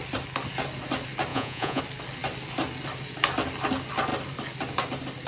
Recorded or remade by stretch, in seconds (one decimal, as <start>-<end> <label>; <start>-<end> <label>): 0.0-1.3 recorded; 1.3-1.8 remade; 1.8-5.3 recorded